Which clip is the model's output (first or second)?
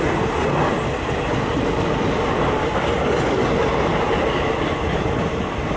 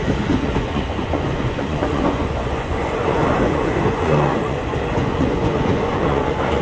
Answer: second